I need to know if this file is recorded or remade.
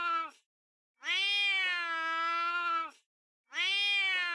recorded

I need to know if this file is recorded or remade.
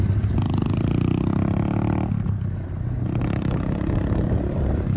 recorded